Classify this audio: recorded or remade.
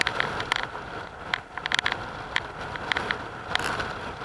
recorded